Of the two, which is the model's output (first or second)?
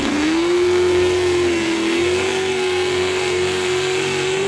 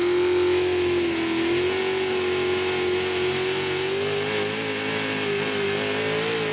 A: first